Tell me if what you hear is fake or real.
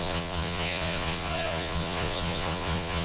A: fake